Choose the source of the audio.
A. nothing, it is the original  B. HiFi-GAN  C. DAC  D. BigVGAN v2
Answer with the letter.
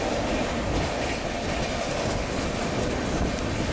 A